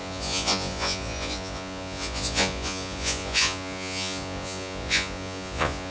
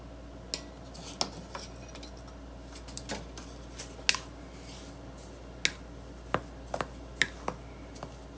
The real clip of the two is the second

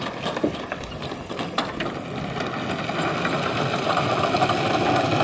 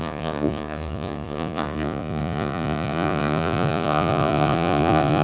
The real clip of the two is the first